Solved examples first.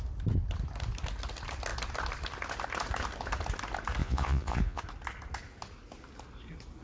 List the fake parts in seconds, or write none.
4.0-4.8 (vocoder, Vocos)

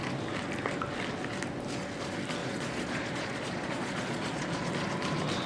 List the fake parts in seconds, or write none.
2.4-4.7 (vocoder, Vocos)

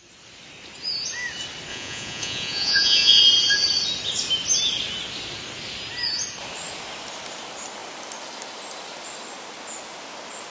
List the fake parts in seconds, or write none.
1.7-3.2 (vocoder, Vocos)

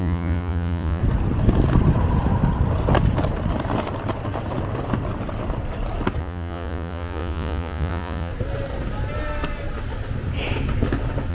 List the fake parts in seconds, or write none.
0.0-1.0 (vocoder, Vocos); 6.2-8.3